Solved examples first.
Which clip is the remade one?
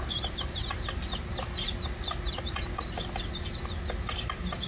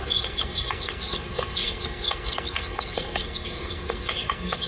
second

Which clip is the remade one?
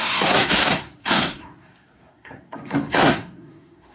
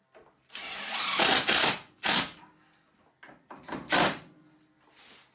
first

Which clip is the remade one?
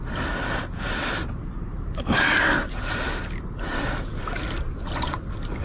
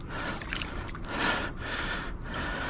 second